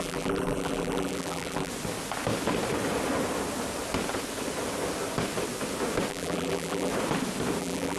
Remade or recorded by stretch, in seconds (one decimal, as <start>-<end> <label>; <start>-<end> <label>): 0.0-1.7 remade; 1.7-6.1 recorded; 6.1-6.9 remade; 6.9-7.6 recorded; 7.6-8.0 remade